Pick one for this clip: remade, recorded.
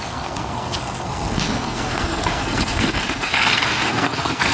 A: remade